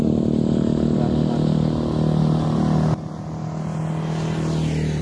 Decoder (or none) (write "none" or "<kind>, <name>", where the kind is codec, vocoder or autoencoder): none